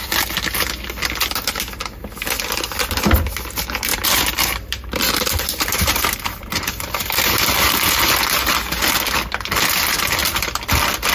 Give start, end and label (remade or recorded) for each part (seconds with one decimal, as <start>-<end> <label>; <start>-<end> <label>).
0.0-3.9 recorded; 3.9-8.1 remade; 8.1-11.1 recorded